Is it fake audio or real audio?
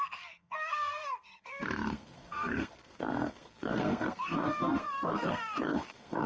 fake